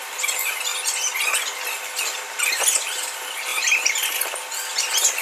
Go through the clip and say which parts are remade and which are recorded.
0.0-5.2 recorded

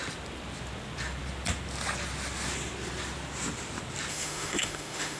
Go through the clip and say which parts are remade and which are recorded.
0.0-4.1 recorded; 4.1-5.2 remade

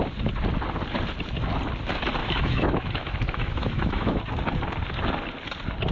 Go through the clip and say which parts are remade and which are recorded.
0.0-2.2 recorded; 2.2-4.2 remade; 4.2-5.9 recorded

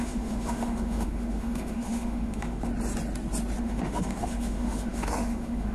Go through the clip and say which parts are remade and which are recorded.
0.0-2.7 remade; 2.7-3.6 recorded; 3.6-5.7 remade

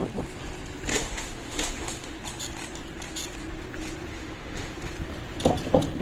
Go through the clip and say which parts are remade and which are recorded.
0.0-0.9 recorded; 0.9-2.2 remade; 2.2-4.1 recorded; 4.1-4.9 remade; 4.9-6.0 recorded

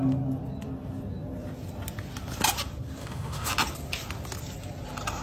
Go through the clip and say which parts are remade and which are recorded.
0.0-3.0 recorded; 3.0-3.5 remade; 3.5-5.2 recorded